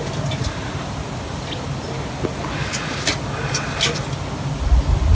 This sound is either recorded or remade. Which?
recorded